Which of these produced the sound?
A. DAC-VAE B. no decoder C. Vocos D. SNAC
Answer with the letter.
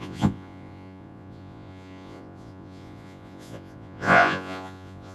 C